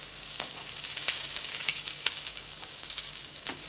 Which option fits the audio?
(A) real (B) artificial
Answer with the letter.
B